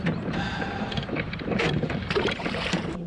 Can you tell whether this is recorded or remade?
remade